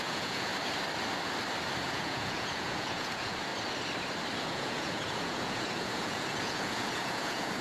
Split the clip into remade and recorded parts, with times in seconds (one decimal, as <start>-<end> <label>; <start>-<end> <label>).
0.0-0.5 remade; 0.5-1.8 recorded; 1.8-3.5 remade; 3.5-4.4 recorded; 4.4-7.6 remade

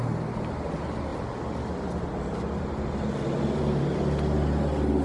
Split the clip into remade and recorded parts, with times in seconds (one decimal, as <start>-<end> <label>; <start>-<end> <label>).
0.0-5.0 recorded

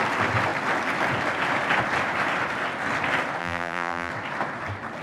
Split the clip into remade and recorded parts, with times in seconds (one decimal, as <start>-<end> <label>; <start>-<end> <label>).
0.0-3.4 recorded; 3.4-4.1 remade; 4.1-5.0 recorded

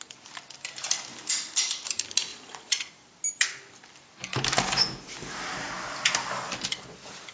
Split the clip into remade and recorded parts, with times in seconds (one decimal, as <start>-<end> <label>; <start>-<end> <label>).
0.0-2.3 recorded; 2.3-2.9 remade; 2.9-7.3 recorded

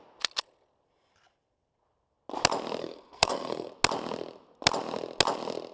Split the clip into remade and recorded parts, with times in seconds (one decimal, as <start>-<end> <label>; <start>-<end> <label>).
0.0-2.8 recorded; 2.8-3.7 remade; 3.7-5.7 recorded

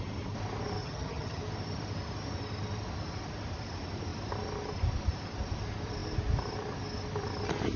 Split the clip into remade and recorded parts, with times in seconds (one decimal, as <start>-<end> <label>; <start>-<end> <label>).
0.0-0.8 recorded; 0.8-1.4 remade; 1.4-7.8 recorded